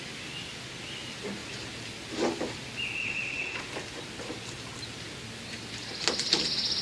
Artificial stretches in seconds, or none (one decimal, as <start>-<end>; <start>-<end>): 3.0-3.6